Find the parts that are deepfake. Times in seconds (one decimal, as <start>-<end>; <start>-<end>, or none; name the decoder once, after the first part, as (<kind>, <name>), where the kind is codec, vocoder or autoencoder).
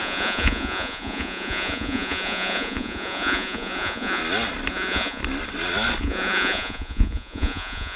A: 0.0-4.2 (vocoder, Vocos); 4.7-5.2; 6.0-8.0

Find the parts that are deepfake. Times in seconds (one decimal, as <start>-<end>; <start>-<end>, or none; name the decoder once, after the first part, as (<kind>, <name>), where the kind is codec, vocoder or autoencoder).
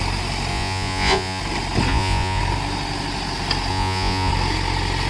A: 0.5-1.4 (vocoder, Vocos); 1.9-2.4; 3.7-4.3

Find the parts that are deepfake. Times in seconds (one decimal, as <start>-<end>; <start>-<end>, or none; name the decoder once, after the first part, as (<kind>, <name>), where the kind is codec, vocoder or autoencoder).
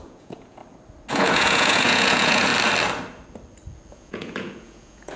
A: 0.0-0.6 (vocoder, Vocos); 1.1-2.5; 3.9-5.2